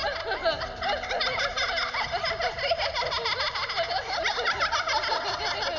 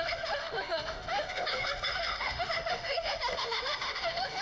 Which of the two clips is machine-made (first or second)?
second